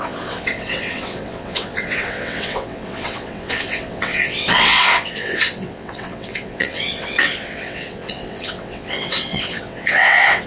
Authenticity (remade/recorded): remade